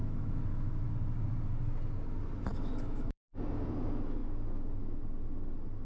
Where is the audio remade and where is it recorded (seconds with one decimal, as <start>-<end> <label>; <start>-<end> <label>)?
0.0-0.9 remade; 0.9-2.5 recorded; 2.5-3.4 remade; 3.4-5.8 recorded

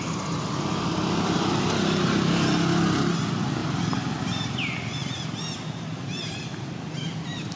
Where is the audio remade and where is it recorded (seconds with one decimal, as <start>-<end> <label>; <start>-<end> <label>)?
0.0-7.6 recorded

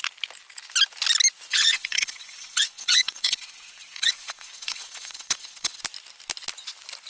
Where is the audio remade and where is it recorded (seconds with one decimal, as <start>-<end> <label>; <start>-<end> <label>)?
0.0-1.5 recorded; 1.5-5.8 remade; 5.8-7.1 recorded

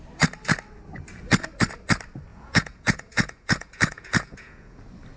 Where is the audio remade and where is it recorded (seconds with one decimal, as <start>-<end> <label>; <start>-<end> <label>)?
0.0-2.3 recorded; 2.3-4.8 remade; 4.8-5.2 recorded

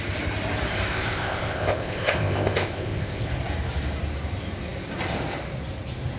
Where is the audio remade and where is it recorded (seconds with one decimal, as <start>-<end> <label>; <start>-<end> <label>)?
0.0-0.9 recorded; 0.9-3.3 remade; 3.3-6.2 recorded

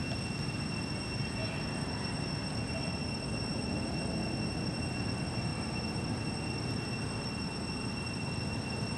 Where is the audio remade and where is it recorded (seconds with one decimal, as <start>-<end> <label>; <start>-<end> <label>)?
0.0-9.0 recorded

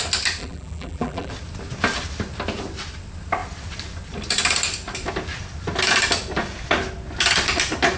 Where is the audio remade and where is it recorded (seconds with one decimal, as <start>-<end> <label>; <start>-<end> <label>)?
0.0-0.4 recorded; 0.4-1.3 remade; 1.3-8.0 recorded